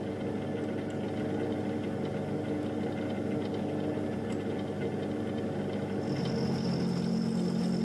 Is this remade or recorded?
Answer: recorded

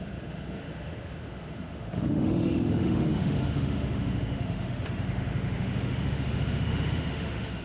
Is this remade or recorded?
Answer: remade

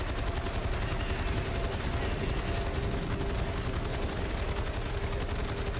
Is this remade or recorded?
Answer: recorded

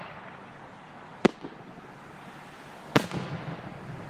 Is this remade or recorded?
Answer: recorded